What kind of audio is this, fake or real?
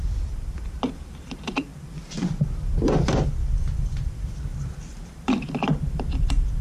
fake